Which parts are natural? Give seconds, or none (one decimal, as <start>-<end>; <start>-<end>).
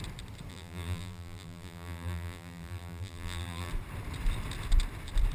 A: 0.0-0.5; 3.7-5.3